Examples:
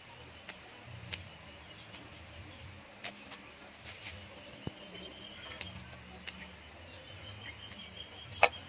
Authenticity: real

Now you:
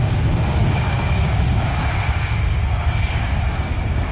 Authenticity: fake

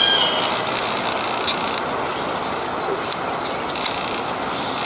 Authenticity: real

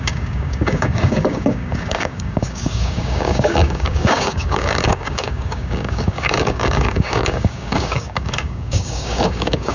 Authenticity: fake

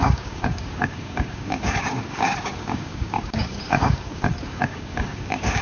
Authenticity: fake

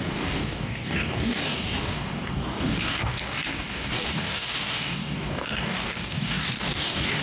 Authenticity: fake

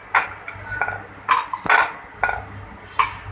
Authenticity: real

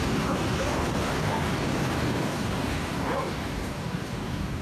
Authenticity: fake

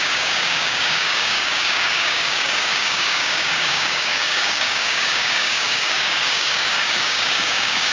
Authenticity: fake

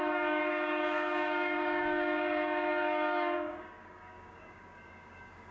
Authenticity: fake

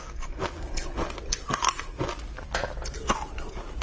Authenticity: real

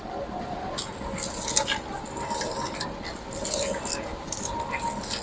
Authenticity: real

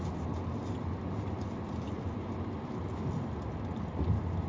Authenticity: real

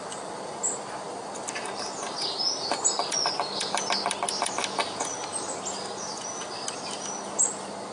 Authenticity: real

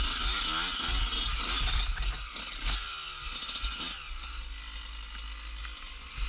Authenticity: real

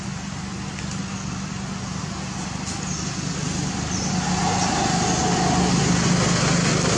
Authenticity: real